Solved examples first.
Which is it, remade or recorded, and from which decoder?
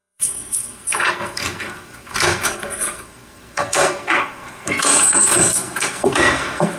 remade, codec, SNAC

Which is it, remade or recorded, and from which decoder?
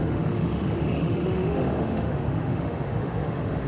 remade, autoencoder, DAC-VAE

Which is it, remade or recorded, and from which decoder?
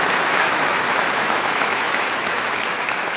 remade, autoencoder, DAC-VAE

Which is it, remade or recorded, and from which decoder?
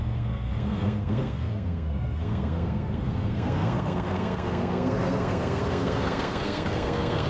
remade, codec, SNAC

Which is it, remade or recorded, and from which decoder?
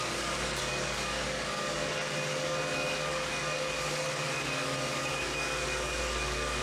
remade, codec, DAC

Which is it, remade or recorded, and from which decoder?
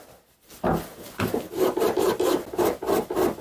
recorded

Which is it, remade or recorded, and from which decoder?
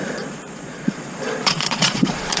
remade, vocoder, Vocos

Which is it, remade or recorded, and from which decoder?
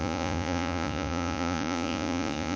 remade, vocoder, Vocos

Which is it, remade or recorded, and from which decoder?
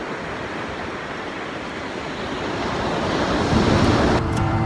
remade, vocoder, BigVGAN v2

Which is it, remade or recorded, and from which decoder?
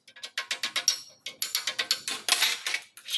recorded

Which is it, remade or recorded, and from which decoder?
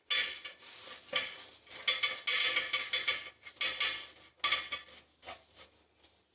recorded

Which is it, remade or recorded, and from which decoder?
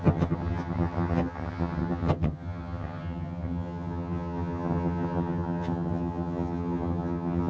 remade, vocoder, HiFi-GAN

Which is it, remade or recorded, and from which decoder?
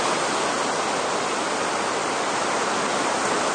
recorded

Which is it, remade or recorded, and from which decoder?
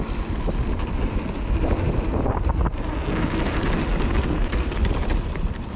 recorded